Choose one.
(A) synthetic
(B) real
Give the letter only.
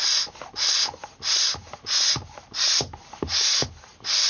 B